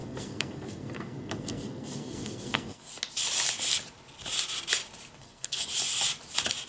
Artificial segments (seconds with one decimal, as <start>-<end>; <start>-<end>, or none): 0.0-2.9; 5.2-5.7